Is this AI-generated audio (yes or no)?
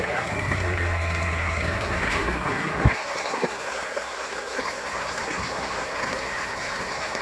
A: yes